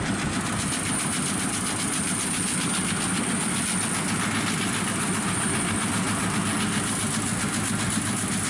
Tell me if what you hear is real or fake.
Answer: real